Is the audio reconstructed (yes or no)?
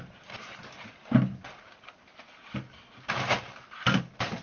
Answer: no